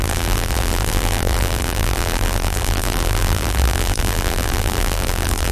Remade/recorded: remade